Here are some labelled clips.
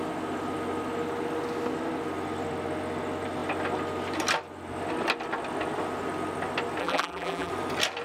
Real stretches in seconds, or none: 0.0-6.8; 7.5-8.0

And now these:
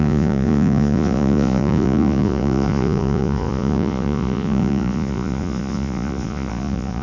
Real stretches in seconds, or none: none

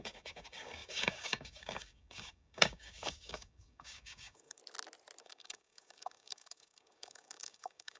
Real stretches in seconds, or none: 4.6-5.2

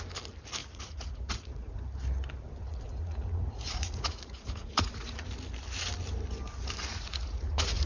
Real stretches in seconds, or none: 0.0-0.6; 1.8-2.6; 5.3-6.9

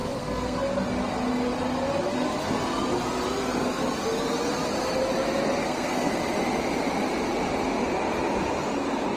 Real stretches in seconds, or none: 0.6-5.6; 6.1-9.2

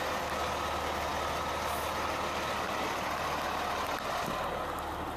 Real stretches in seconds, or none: 0.0-5.2

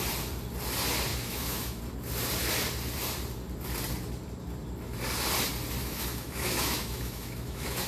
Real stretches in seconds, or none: 0.0-1.1; 1.8-5.8